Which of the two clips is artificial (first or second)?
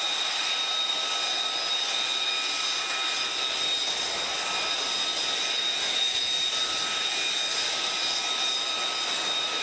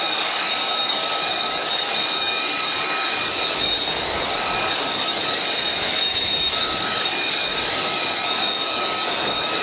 second